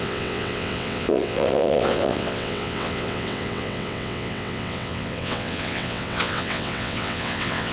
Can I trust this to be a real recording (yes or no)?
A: no